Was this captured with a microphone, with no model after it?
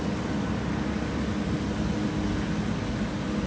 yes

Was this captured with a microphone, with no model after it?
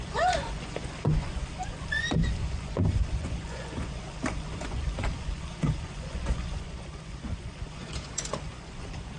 no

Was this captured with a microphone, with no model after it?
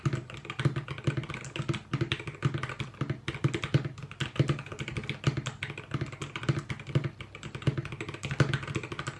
yes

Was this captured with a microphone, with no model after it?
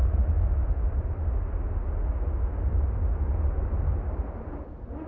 yes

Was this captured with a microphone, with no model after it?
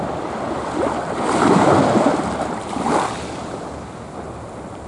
yes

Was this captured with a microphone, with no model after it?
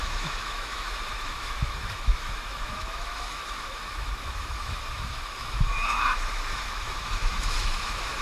no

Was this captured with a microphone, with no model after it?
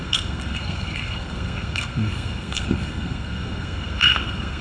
no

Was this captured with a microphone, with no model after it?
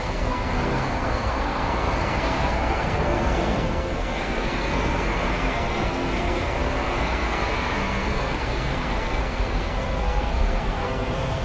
no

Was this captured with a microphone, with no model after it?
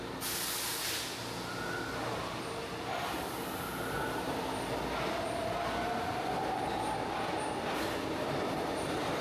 yes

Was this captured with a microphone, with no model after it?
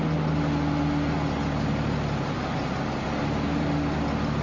yes